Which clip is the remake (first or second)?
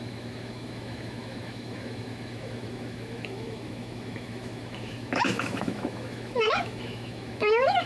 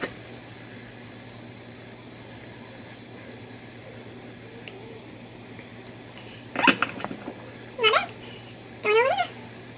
first